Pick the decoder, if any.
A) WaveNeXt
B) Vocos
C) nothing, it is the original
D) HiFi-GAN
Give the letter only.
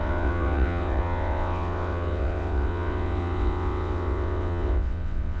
A